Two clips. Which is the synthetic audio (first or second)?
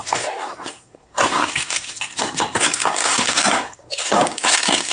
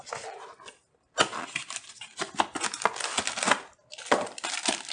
first